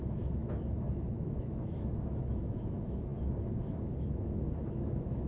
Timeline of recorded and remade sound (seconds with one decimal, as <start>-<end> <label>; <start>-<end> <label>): 0.0-5.3 remade